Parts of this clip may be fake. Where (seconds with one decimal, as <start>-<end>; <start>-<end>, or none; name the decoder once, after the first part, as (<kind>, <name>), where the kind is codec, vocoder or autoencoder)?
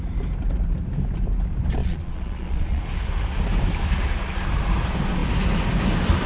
1.8-2.8 (vocoder, Vocos)